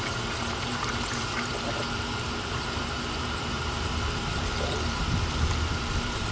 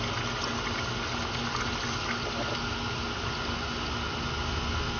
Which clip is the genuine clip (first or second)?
second